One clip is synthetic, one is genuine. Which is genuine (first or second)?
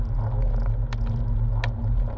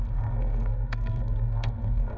first